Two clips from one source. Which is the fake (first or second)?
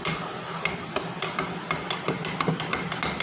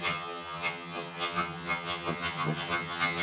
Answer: second